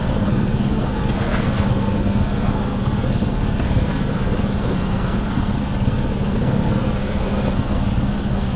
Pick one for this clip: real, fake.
fake